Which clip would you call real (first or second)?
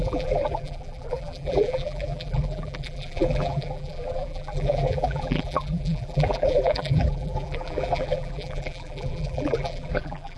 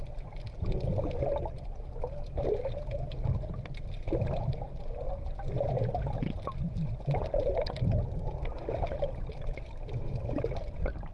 second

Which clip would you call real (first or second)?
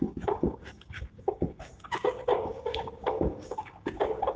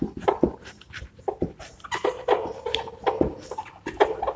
second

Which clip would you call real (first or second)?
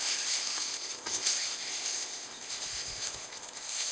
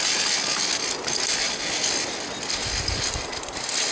second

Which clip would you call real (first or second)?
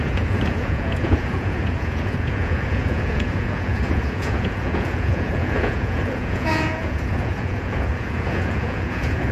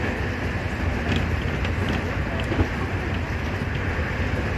second